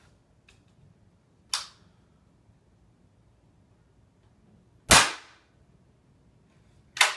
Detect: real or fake real